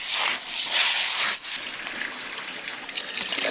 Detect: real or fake real